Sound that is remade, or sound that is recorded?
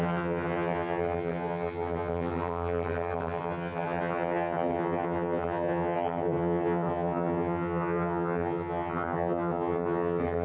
remade